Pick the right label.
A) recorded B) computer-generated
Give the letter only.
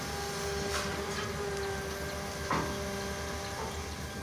A